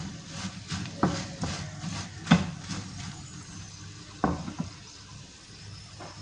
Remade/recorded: recorded